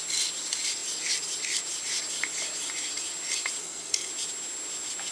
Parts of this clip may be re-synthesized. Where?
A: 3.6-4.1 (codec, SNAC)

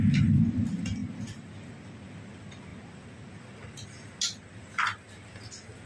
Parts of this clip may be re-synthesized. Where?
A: none

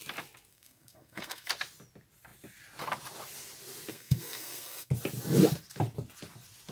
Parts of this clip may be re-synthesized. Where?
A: 0.5-1.5 (codec, SNAC); 3.9-4.9

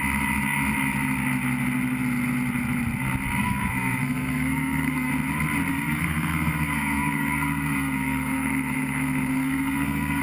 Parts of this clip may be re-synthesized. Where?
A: 3.4-5.1 (codec, SNAC); 5.7-10.2

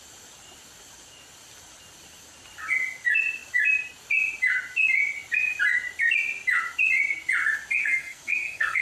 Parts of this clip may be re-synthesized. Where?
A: 7.8-8.8 (codec, SNAC)

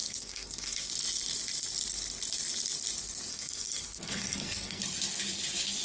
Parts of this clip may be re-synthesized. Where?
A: 0.0-0.9 (codec, SNAC); 3.3-4.8

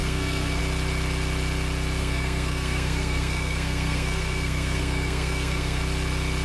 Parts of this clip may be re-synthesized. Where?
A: 0.0-0.6 (codec, SNAC); 2.0-5.8